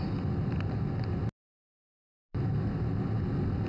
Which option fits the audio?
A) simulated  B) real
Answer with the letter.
B